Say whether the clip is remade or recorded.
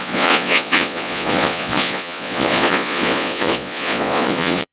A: remade